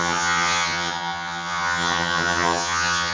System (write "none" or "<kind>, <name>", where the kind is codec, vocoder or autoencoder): vocoder, HiFi-GAN